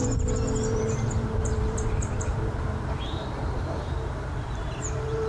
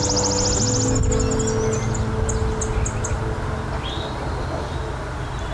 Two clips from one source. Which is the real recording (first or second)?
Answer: second